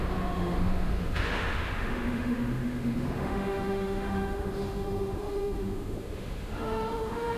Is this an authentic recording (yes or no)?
no